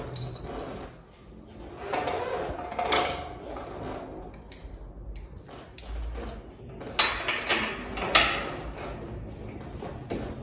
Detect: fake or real real